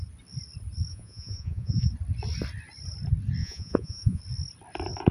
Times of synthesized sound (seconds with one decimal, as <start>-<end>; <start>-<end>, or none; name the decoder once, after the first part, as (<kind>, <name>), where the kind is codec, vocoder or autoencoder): 0.9-1.9 (vocoder, Vocos); 3.4-4.2